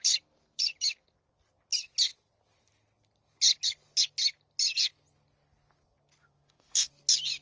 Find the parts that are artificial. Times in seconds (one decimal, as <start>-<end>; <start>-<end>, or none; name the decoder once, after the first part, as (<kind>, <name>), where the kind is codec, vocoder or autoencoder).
6.2-6.9 (autoencoder, DAC-VAE)